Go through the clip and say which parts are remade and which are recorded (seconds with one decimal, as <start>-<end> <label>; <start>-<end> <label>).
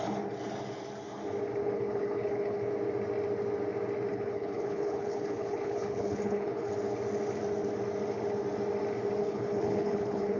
0.0-1.6 recorded; 1.6-2.7 remade; 2.7-4.1 recorded; 4.1-6.7 remade; 6.7-9.2 recorded; 9.2-10.4 remade